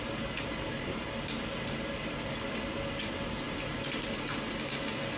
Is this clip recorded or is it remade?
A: recorded